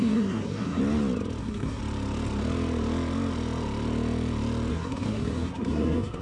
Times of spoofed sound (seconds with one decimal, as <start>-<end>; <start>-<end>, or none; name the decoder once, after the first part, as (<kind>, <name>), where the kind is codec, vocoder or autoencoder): 0.0-0.8 (codec, SNAC); 1.4-1.8; 4.7-6.2